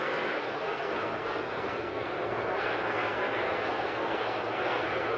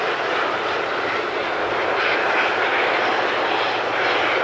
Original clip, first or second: second